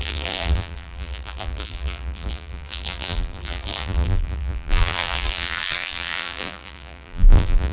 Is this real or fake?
fake